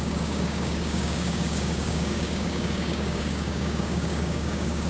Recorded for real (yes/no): no